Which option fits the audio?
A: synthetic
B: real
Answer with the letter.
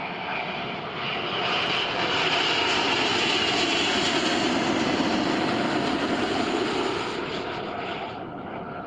B